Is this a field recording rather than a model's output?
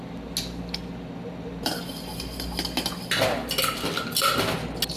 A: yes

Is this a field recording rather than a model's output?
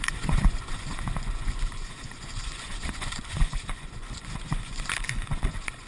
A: no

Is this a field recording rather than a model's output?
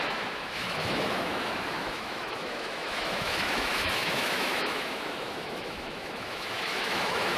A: no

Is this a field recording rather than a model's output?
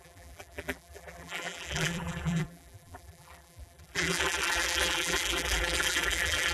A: no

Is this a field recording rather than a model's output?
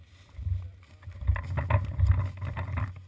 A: yes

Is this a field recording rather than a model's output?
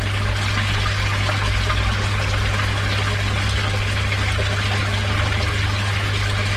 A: yes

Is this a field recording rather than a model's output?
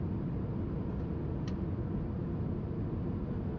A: yes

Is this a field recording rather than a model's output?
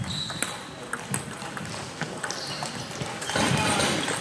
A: yes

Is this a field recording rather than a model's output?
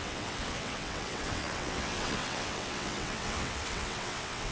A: no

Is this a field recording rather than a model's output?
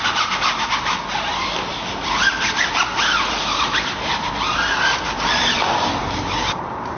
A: yes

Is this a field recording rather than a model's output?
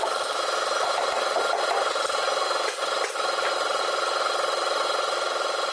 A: yes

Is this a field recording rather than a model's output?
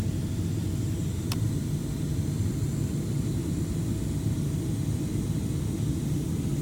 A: yes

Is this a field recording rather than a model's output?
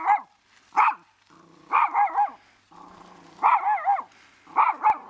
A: yes